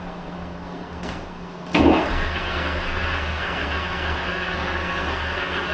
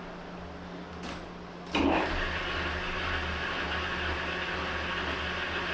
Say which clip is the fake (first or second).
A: first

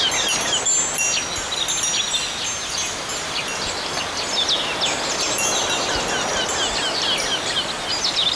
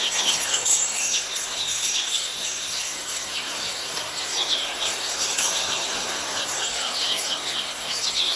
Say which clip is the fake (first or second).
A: second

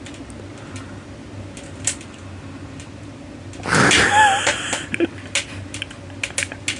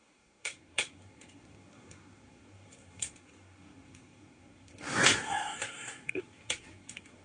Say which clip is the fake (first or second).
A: second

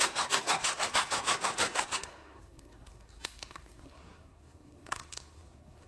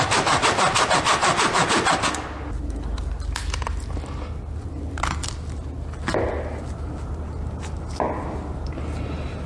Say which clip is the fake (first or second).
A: first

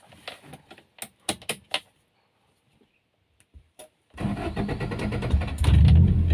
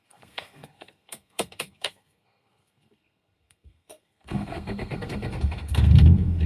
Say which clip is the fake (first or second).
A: second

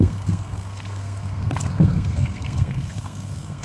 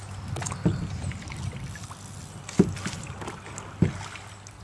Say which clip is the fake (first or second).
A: first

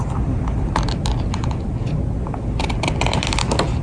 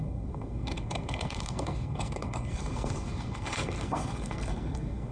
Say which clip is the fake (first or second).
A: second